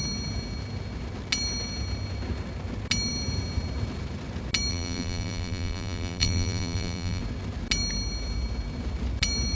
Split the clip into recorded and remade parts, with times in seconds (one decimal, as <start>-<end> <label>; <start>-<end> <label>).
0.0-4.7 recorded; 4.7-7.2 remade; 7.2-9.5 recorded